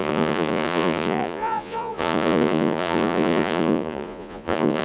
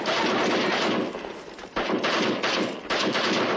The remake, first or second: first